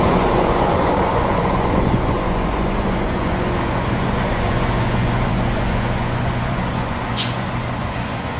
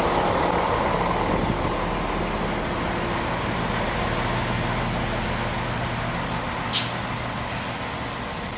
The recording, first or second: second